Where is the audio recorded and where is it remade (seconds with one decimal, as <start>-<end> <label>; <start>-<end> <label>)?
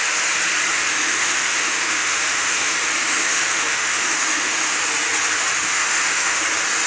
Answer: 0.0-0.7 recorded; 0.7-4.8 remade; 4.8-5.6 recorded; 5.6-6.4 remade; 6.4-6.9 recorded